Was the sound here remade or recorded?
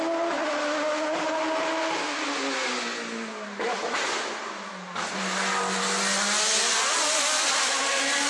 recorded